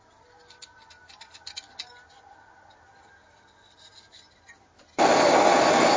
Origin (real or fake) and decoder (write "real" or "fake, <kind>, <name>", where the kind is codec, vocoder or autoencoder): real